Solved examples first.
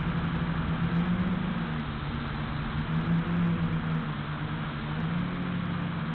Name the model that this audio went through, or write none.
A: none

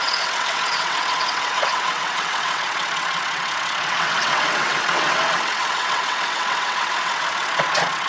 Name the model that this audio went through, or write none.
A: vocoder, WaveNeXt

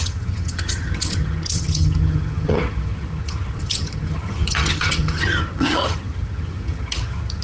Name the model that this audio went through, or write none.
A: vocoder, HiFi-GAN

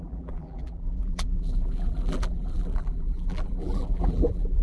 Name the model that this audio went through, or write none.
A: vocoder, BigVGAN v2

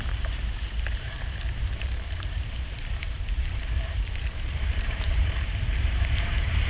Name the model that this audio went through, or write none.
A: vocoder, BigVGAN v2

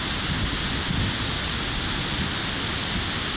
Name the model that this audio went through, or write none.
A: none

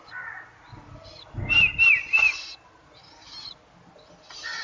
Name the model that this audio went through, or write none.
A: none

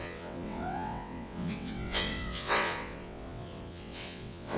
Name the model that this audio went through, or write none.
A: vocoder, WaveNeXt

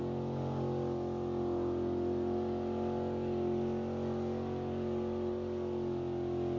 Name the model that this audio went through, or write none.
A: none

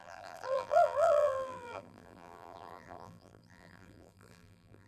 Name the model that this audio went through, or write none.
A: vocoder, BigVGAN v2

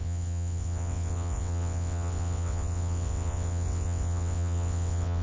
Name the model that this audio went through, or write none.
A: vocoder, WaveNeXt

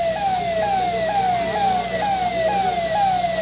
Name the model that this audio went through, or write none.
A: none